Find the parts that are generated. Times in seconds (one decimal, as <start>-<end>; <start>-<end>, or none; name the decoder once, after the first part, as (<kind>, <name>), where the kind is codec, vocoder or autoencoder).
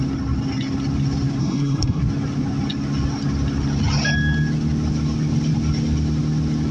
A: 1.4-2.0 (codec, SNAC)